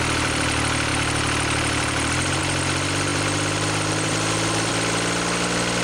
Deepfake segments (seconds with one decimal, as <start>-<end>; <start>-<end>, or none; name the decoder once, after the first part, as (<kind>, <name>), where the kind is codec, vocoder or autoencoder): 0.9-2.4 (vocoder, BigVGAN v2); 3.1-4.7